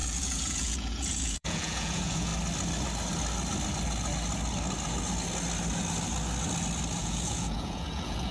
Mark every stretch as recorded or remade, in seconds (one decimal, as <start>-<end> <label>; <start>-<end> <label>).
0.0-2.3 remade; 2.3-7.0 recorded; 7.0-8.3 remade

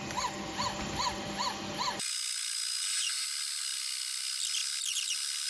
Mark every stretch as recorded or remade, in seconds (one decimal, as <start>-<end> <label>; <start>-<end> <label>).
0.0-4.6 recorded; 4.6-5.5 remade

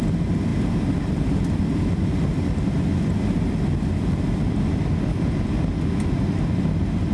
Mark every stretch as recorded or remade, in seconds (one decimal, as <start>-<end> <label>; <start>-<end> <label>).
0.0-7.1 recorded